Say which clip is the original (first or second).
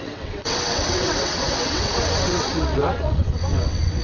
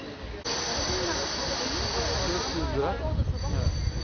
second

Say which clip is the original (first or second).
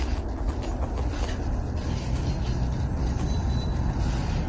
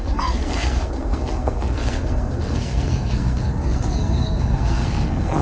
first